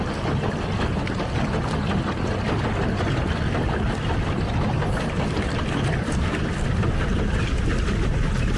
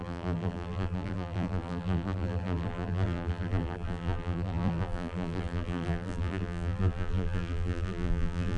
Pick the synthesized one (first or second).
second